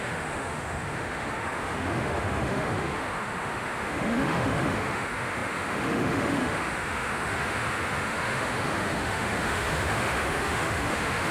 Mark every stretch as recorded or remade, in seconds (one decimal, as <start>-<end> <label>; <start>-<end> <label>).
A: 0.0-11.3 remade